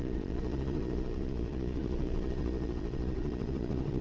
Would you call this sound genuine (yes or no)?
no